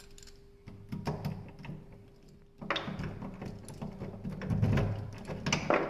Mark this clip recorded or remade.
recorded